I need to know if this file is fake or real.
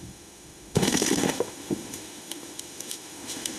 fake